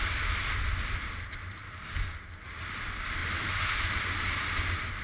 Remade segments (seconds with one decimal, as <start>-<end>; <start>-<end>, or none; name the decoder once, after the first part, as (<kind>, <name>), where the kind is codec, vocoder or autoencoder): none